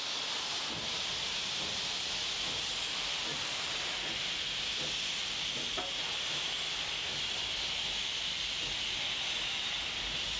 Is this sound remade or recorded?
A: recorded